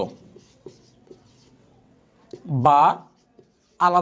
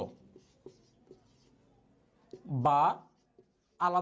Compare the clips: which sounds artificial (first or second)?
first